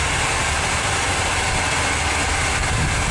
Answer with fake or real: real